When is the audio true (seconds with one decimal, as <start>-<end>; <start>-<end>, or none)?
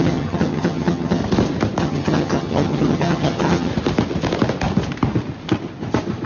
1.2-1.8; 3.7-6.3